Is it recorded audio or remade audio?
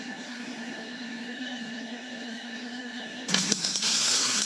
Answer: remade